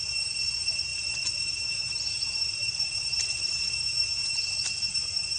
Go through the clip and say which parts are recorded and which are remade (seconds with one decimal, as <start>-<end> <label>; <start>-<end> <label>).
0.0-5.4 remade